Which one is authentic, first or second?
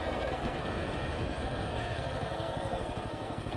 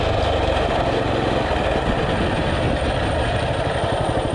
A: second